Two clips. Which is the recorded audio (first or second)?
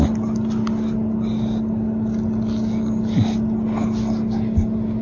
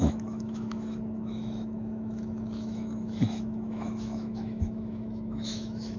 first